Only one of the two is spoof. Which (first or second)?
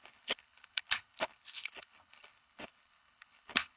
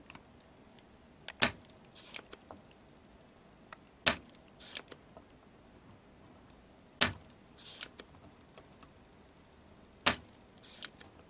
first